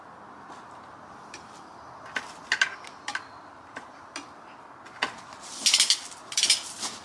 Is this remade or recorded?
recorded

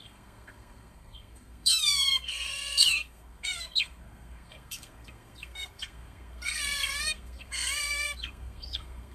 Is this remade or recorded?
remade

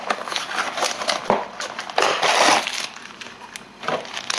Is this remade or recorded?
recorded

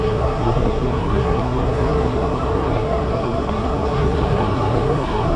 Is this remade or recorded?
remade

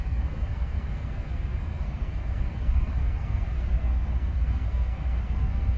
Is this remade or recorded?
remade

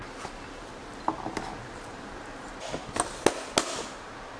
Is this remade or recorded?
recorded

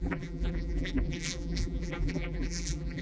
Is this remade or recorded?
remade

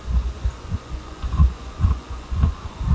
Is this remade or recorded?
remade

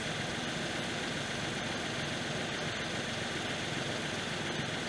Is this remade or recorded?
recorded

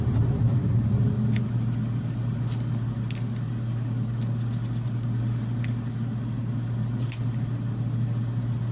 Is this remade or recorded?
recorded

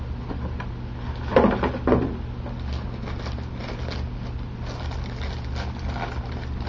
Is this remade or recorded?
recorded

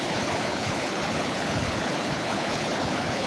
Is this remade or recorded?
remade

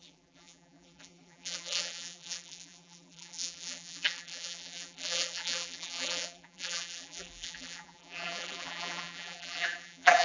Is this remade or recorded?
remade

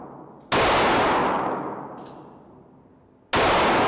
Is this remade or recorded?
recorded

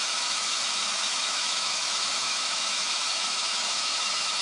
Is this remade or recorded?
remade